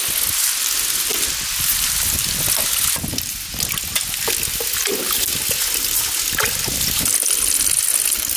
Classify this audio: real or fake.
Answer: real